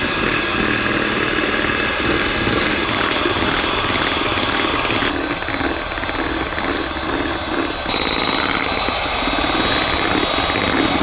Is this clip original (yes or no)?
yes